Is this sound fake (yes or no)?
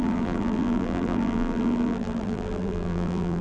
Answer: yes